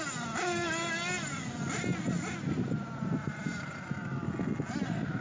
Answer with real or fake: real